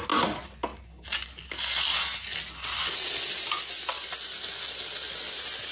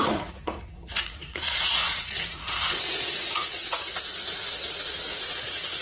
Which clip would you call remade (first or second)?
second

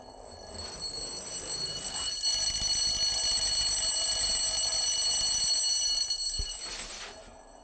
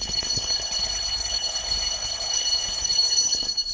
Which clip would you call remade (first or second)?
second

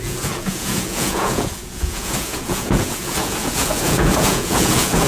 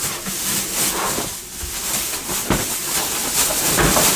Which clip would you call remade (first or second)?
first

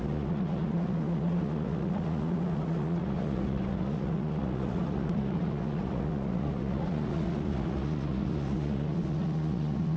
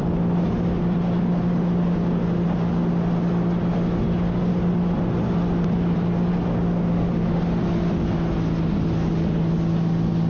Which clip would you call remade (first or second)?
first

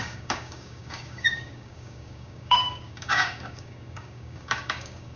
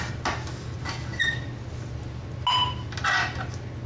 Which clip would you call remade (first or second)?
first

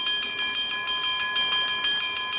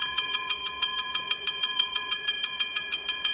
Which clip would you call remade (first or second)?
second